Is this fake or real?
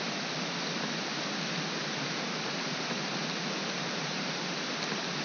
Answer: fake